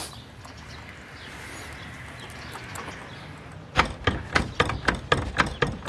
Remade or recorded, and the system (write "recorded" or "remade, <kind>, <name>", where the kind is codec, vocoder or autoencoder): recorded